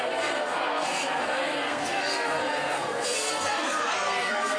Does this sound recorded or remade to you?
remade